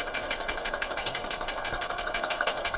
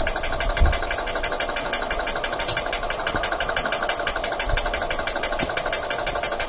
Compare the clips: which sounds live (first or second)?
second